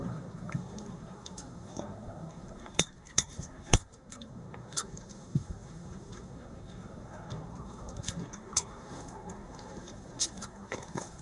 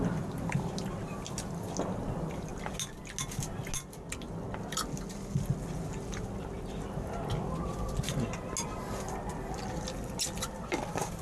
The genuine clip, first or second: second